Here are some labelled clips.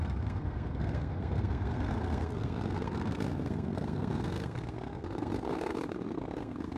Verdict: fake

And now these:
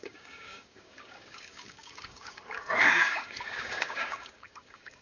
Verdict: fake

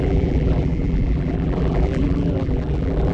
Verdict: fake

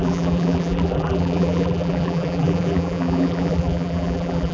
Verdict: fake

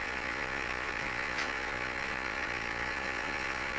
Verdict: fake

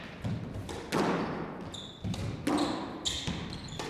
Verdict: real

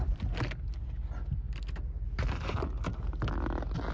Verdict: real